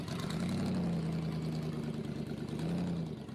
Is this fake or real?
real